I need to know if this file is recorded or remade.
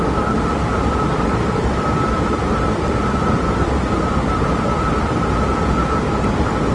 recorded